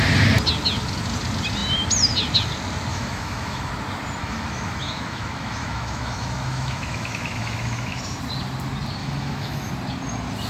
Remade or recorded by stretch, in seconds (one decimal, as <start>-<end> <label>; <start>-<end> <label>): 0.0-2.9 recorded; 2.9-3.7 remade; 3.7-4.2 recorded; 4.2-8.2 remade; 8.2-9.0 recorded; 9.0-9.7 remade; 9.7-10.5 recorded